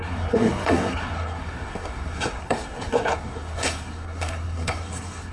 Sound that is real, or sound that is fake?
fake